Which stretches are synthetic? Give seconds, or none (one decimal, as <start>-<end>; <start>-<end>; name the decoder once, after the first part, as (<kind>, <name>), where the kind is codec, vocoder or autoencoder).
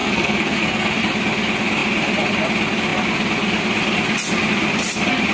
0.0-1.0 (codec, SNAC)